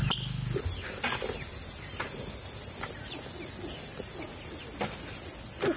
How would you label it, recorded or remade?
recorded